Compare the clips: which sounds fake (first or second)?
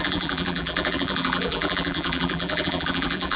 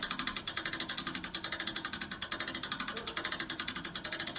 first